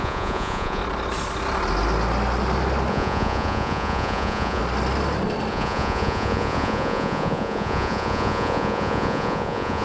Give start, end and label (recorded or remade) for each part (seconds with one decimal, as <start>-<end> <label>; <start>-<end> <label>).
0.0-0.8 remade; 0.8-2.9 recorded; 2.9-4.6 remade; 4.6-5.5 recorded; 5.5-9.8 remade